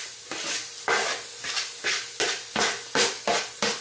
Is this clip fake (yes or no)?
no